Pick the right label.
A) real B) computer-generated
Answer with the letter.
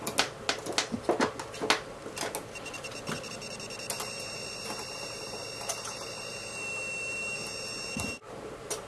A